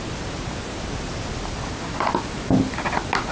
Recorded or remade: recorded